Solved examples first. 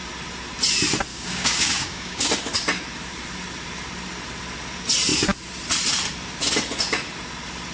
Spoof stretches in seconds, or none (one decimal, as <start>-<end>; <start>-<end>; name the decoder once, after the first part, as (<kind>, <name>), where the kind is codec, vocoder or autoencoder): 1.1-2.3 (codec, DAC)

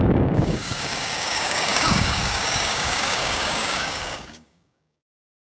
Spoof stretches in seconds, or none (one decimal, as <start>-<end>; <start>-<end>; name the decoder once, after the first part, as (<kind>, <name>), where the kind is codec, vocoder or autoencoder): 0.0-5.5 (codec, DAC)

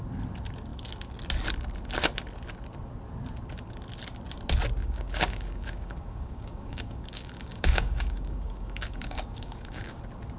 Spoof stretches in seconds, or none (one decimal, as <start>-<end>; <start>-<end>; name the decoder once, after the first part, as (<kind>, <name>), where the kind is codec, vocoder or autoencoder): 4.8-10.0 (codec, DAC)